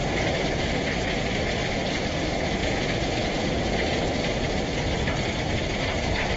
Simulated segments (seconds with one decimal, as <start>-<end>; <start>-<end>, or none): 0.0-0.6; 2.6-4.0